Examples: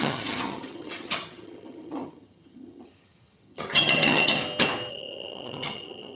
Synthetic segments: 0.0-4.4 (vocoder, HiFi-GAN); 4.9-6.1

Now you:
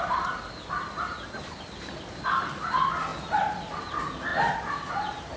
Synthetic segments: none